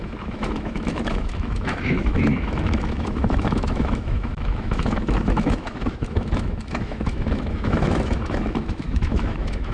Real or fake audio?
fake